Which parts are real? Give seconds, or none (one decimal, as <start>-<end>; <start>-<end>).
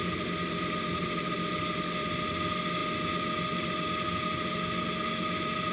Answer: 0.0-5.7